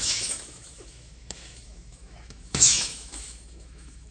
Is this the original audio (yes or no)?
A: no